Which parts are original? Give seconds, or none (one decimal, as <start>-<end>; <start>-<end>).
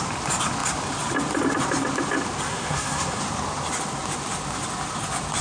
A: 0.0-2.5; 3.2-5.4